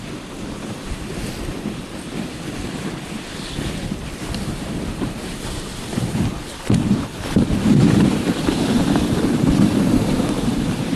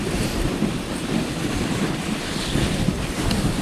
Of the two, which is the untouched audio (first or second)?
second